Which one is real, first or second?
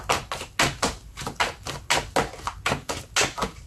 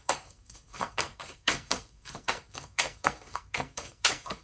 first